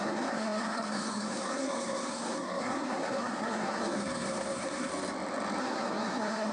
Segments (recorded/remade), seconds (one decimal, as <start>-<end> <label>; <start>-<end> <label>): 0.0-4.9 remade; 4.9-5.6 recorded; 5.6-6.5 remade